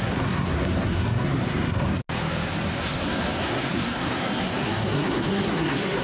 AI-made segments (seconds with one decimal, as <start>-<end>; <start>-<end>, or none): 0.0-2.0; 2.8-6.0